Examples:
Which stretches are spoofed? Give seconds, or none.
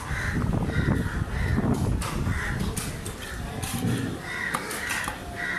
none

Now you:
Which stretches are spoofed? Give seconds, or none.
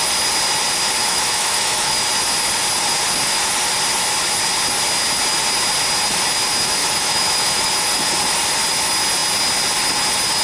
1.0-2.1; 6.8-7.7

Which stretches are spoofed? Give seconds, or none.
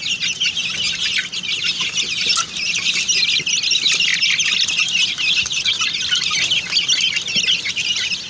none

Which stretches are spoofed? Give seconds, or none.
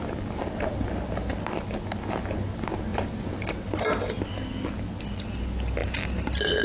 none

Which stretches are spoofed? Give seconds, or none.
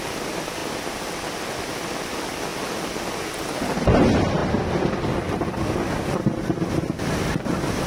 none